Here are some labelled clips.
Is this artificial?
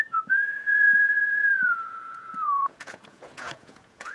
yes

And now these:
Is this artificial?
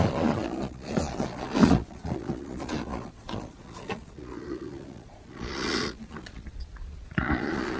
yes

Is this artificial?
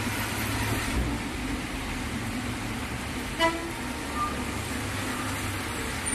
no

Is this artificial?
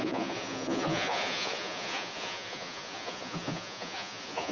yes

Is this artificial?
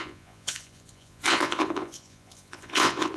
yes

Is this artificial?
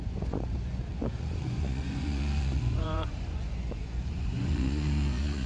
yes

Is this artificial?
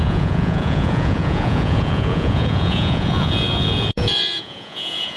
yes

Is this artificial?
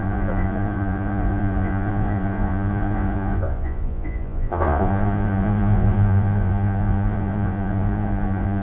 yes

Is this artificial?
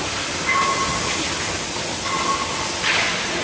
no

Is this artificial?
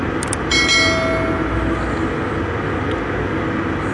no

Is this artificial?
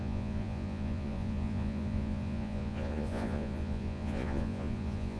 yes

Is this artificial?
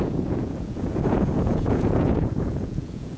yes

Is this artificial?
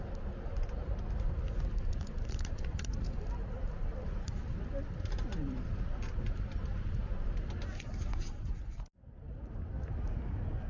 no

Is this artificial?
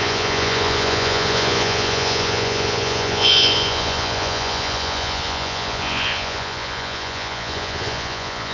yes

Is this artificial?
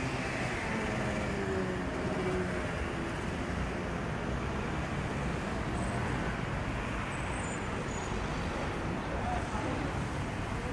no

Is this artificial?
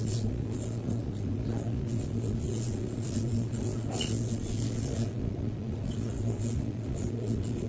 yes